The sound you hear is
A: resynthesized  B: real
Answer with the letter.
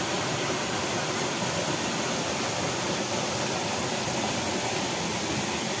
A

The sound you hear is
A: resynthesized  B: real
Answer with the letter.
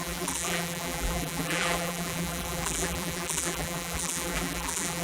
A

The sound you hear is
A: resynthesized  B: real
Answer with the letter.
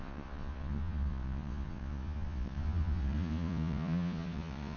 A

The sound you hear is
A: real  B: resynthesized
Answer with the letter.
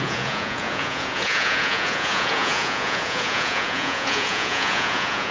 B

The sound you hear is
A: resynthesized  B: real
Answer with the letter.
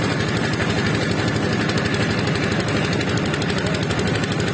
B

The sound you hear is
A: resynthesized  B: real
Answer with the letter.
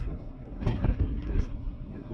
A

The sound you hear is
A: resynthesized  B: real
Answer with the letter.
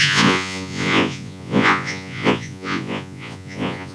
A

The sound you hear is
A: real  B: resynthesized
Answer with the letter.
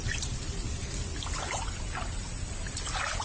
A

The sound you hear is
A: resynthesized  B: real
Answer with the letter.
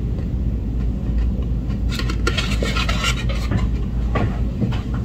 B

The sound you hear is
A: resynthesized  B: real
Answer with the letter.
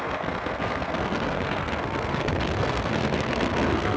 A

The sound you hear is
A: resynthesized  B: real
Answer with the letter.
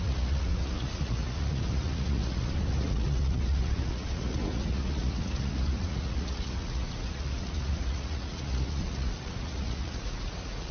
A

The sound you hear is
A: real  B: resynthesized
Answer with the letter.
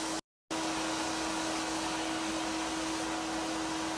A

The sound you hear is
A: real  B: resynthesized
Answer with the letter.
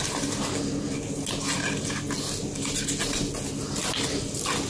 A